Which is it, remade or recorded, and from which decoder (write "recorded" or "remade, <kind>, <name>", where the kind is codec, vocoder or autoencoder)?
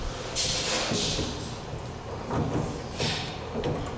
recorded